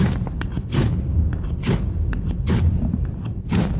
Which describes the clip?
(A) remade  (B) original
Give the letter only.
B